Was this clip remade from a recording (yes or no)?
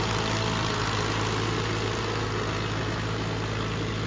no